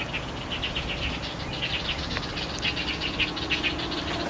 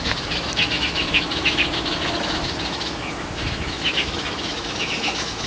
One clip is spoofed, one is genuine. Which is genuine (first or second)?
first